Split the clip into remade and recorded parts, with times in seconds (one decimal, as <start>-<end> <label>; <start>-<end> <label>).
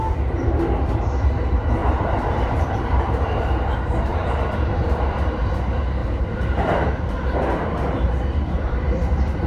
0.0-1.8 recorded; 1.8-3.6 remade; 3.6-4.1 recorded; 4.1-5.5 remade; 5.5-6.0 recorded; 6.0-8.8 remade; 8.8-9.5 recorded